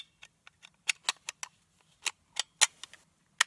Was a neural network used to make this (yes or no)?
no